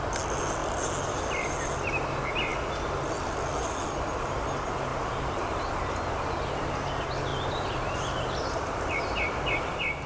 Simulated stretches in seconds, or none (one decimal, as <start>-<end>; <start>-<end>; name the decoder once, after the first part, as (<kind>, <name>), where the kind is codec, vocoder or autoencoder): 4.9-5.7 (vocoder, BigVGAN v2); 7.3-9.0